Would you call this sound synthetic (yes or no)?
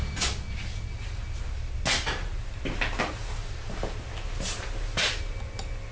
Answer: no